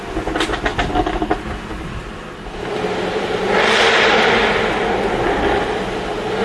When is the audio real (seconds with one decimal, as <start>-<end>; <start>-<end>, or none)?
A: 0.0-6.4